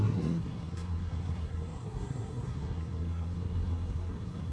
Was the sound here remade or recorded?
remade